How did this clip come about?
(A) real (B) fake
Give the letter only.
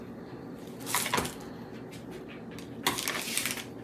A